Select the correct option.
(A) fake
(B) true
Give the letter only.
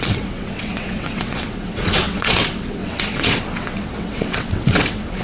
A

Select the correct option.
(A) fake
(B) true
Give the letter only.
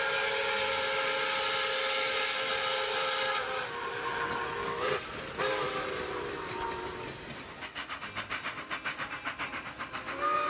B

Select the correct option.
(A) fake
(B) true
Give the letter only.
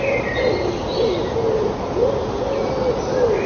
B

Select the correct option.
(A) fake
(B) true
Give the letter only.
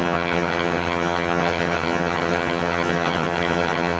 A